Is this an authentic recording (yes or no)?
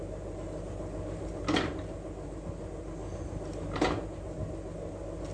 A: yes